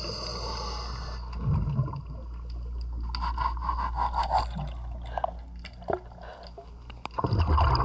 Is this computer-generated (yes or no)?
no